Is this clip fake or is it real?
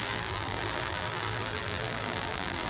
fake